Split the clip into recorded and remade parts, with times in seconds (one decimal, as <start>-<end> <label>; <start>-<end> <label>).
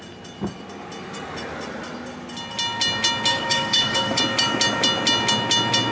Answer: 0.0-3.3 recorded; 3.3-4.2 remade; 4.2-5.9 recorded